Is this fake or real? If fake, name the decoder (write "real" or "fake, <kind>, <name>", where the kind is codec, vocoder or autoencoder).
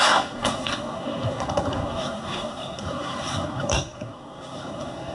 fake, codec, SNAC